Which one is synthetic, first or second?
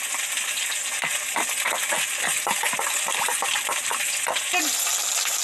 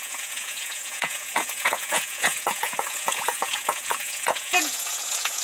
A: second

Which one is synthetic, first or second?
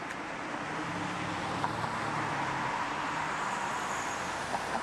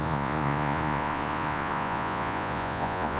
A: second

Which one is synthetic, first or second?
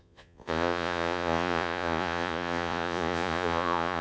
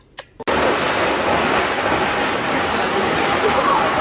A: first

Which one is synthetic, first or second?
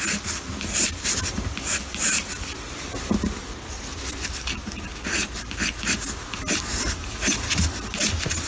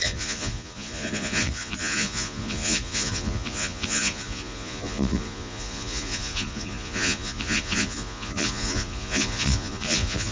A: second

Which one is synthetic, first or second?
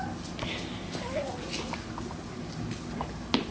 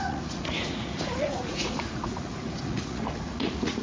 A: second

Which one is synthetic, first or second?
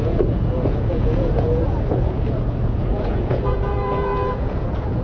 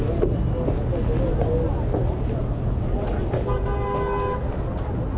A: first